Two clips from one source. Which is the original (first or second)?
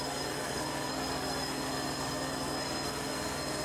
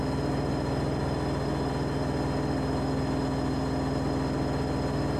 second